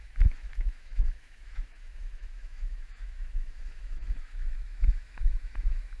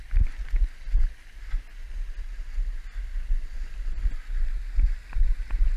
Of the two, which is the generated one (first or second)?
first